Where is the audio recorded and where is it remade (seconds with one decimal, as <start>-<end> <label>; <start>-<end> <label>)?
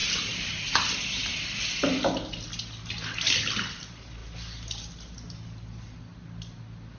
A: 0.0-1.6 remade; 1.6-7.0 recorded